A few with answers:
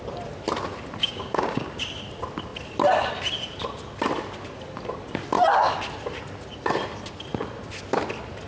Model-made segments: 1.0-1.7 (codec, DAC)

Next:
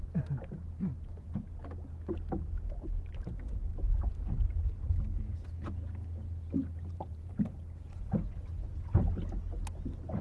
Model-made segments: 6.6-8.1 (vocoder, BigVGAN v2)

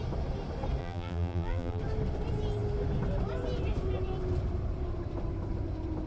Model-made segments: 0.8-1.8 (vocoder, BigVGAN v2)